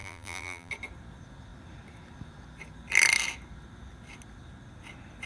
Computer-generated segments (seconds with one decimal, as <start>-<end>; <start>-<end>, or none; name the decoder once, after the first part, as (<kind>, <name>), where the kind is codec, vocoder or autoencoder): 0.0-0.7 (vocoder, BigVGAN v2)